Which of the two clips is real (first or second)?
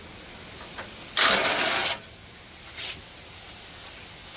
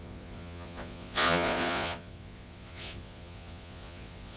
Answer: first